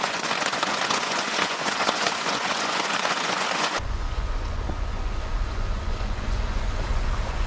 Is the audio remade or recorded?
remade